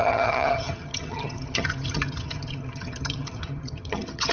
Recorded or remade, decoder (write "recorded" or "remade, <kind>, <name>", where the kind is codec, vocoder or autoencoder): remade, vocoder, HiFi-GAN